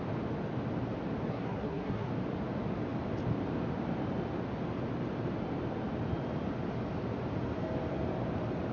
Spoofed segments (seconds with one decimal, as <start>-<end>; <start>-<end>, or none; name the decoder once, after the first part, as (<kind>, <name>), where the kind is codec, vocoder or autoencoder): 1.3-2.1 (codec, SNAC)